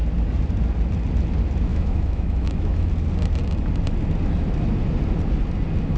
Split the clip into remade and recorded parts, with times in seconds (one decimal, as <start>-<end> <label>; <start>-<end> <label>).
0.0-1.7 recorded; 1.7-2.9 remade; 2.9-6.0 recorded